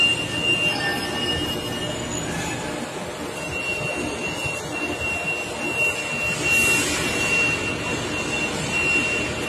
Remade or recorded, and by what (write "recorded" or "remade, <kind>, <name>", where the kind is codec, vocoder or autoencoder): recorded